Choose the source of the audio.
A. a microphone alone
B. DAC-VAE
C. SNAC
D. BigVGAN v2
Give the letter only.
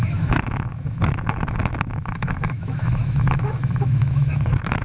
B